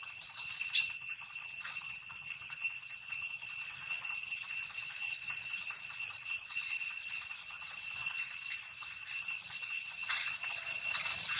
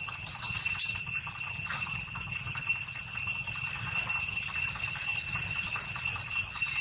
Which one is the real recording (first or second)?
second